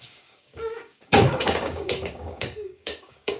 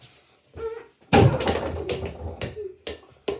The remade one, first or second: first